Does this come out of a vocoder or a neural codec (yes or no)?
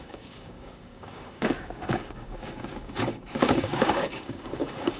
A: yes